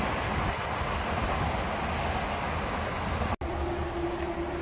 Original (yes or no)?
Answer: yes